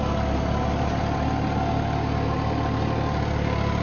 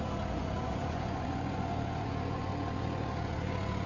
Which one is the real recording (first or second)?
first